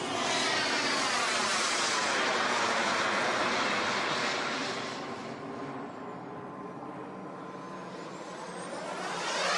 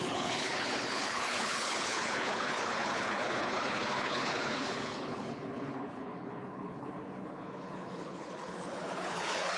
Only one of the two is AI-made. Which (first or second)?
second